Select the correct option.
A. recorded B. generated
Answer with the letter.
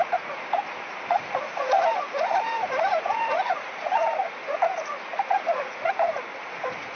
B